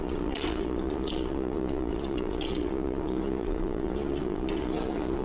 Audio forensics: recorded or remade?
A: remade